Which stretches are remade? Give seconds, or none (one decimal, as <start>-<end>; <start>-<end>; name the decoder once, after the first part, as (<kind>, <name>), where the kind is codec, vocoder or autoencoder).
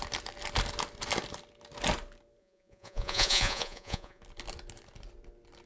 2.4-4.2 (vocoder, Vocos)